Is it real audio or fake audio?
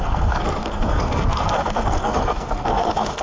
fake